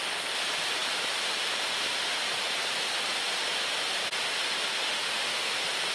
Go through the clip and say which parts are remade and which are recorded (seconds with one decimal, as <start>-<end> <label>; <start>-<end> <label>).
0.0-4.7 recorded; 4.7-5.5 remade; 5.5-5.9 recorded